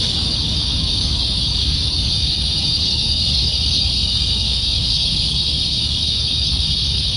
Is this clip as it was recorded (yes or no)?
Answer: no